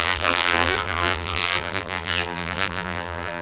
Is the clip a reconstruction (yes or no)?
yes